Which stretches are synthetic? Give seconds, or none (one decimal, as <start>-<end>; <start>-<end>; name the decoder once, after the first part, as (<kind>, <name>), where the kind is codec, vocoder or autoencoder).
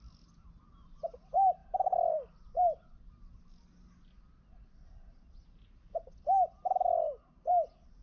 none